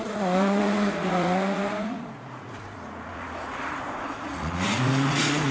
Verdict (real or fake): fake